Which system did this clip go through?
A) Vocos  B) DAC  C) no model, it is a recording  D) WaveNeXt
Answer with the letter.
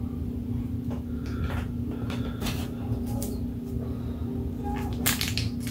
C